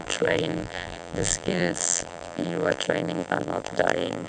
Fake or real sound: fake